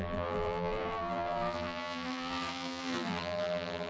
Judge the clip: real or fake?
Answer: fake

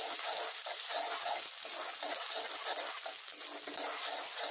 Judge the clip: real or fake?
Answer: real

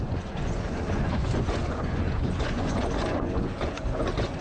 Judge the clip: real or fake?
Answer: fake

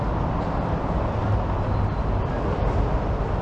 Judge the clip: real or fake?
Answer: real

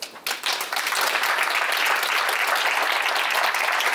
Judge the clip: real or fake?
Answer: real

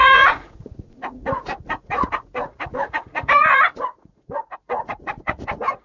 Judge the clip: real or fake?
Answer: fake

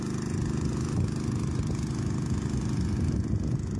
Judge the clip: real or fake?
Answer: real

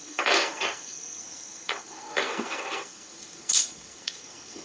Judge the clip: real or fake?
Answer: fake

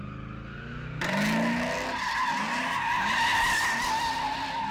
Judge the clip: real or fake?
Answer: real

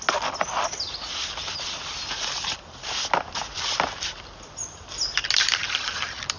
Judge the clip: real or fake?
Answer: real